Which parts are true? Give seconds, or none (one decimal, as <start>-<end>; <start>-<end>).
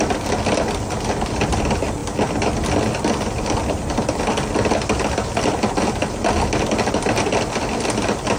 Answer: 0.0-8.4